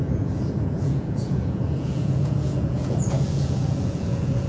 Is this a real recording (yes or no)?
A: no